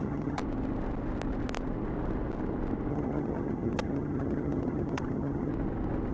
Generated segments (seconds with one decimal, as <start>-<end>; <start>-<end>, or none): 0.0-0.4; 2.9-5.5